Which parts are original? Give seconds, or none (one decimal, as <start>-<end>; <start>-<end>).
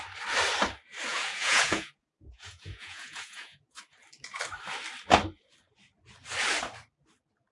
0.0-1.1; 3.8-7.5